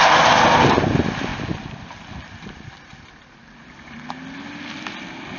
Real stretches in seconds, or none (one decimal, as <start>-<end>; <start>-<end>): 0.0-5.4